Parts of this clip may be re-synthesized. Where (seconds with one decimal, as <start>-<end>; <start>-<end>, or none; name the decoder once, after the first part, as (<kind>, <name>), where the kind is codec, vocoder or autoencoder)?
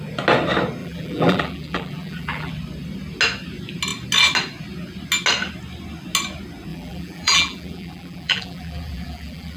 0.8-2.5 (vocoder, BigVGAN v2); 6.7-9.6